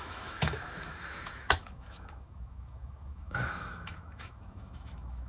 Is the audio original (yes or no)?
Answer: no